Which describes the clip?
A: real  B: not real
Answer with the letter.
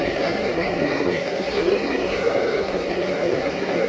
B